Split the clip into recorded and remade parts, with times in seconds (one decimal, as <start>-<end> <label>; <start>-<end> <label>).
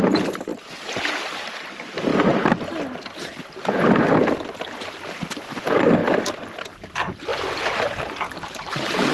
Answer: 0.0-0.5 remade; 0.5-1.7 recorded; 1.7-2.1 remade; 2.1-5.5 recorded; 5.5-6.0 remade; 6.0-6.6 recorded; 6.6-9.1 remade